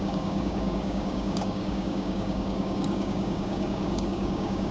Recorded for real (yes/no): no